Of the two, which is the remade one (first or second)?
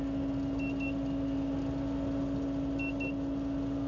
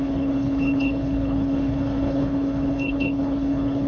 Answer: second